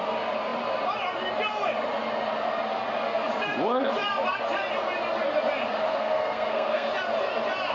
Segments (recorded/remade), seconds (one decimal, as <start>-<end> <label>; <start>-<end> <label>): 0.0-5.9 recorded; 5.9-6.9 remade; 6.9-7.7 recorded